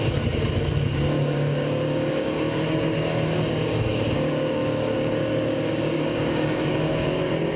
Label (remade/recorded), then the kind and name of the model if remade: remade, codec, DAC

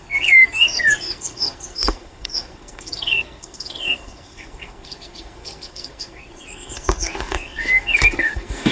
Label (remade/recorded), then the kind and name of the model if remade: remade, codec, SNAC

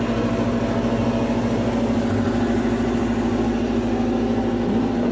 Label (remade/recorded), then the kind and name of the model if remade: recorded